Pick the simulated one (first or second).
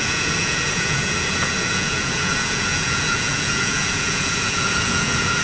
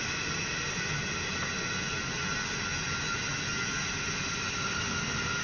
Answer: first